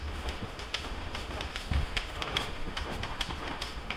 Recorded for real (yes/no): no